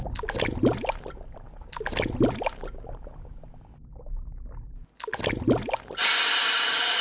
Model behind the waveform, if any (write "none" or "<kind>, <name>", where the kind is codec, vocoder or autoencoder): none